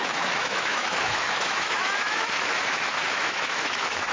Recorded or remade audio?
remade